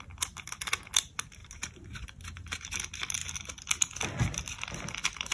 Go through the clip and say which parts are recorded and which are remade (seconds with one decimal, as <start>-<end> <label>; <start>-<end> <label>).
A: 0.0-1.4 recorded; 1.4-2.7 remade; 2.7-5.3 recorded